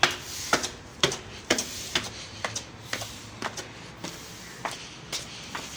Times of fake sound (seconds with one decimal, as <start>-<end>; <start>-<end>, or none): 0.9-3.0